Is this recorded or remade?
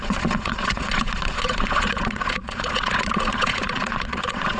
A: remade